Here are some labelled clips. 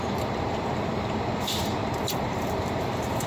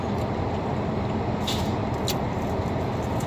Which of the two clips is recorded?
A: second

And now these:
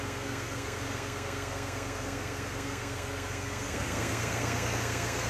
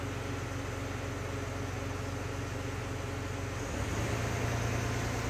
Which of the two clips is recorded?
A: second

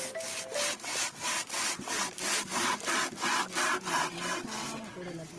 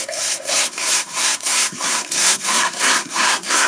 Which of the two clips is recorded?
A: first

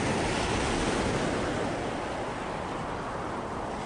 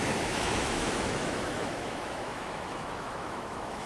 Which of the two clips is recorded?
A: first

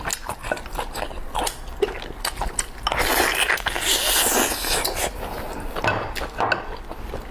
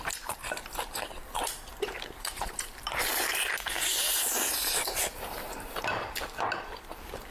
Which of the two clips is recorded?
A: first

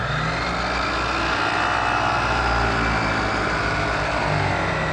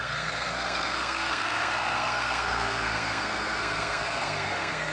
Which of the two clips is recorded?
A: first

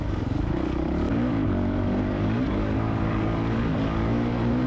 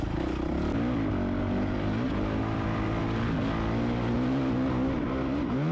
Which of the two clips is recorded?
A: second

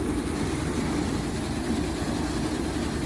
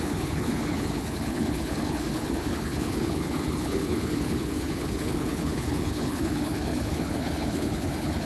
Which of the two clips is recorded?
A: first